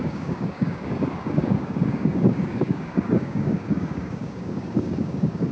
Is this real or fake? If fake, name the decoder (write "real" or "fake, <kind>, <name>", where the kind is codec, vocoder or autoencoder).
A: fake, codec, DAC